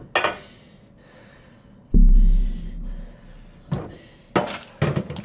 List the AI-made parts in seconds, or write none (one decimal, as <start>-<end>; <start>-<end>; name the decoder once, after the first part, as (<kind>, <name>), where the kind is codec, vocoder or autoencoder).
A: none